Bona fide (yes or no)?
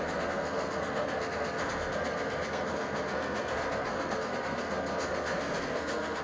no